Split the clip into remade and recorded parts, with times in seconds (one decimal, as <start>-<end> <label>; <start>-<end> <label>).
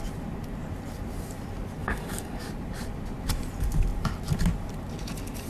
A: 0.0-1.8 recorded; 1.8-2.5 remade; 2.5-5.5 recorded